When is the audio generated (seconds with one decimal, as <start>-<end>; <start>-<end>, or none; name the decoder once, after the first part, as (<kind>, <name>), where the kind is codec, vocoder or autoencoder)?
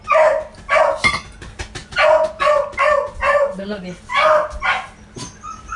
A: 1.8-2.3 (vocoder, Vocos); 3.2-3.8